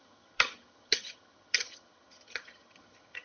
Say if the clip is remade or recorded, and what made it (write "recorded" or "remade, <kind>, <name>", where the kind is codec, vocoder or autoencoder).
remade, vocoder, HiFi-GAN